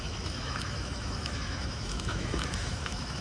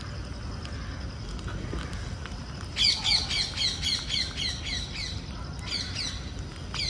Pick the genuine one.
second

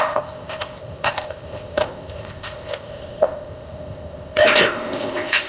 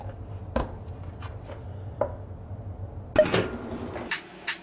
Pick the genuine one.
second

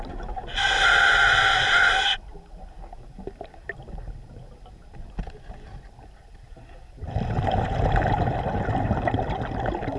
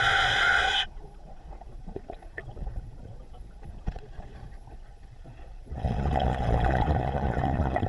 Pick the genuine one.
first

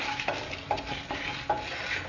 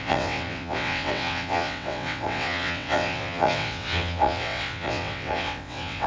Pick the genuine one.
first